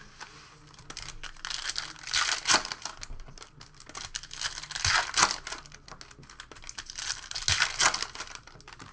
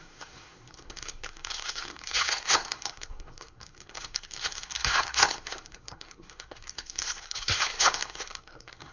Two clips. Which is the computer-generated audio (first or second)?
second